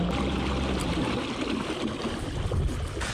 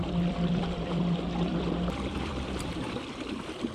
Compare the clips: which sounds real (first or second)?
first